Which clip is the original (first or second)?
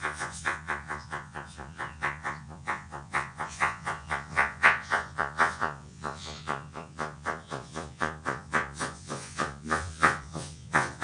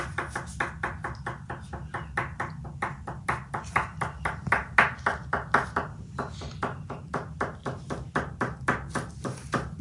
second